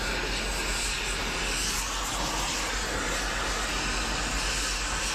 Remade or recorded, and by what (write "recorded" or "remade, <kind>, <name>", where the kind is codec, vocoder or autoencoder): recorded